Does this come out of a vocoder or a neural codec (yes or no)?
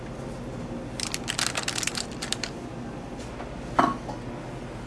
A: no